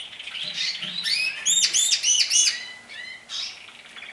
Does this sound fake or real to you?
real